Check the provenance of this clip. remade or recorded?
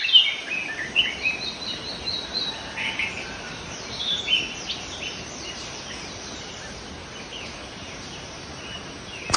recorded